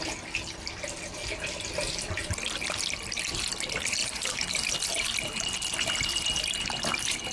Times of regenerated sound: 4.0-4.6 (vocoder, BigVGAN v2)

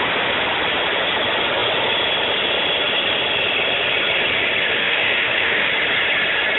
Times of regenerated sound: 4.8-5.7 (autoencoder, DAC-VAE)

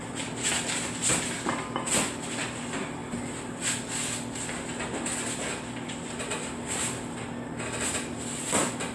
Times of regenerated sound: none

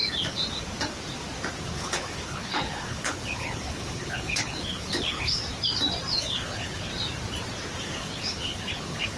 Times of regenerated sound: 1.6-5.4 (codec, HILCodec); 6.2-6.9; 7.8-9.2

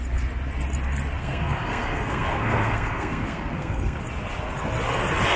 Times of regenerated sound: 1.2-4.0 (codec, SNAC)